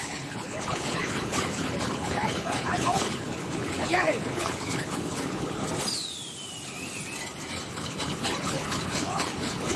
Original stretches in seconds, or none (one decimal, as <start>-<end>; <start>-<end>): 5.6-7.7